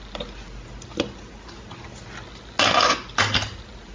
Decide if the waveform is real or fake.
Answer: real